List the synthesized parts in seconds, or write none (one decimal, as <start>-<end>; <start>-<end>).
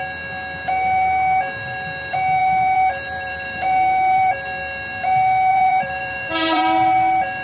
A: 2.4-4.3; 5.5-6.6